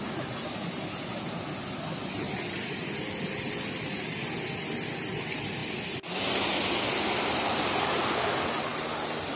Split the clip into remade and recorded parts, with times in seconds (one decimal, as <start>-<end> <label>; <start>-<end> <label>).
0.0-9.4 recorded